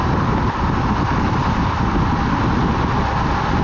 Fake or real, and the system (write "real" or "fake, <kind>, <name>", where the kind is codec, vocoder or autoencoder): real